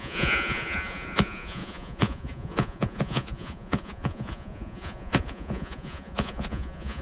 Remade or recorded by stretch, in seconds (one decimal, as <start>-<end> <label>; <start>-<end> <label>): 0.0-7.0 remade